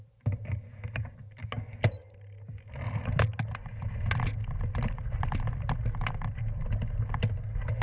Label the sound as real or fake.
real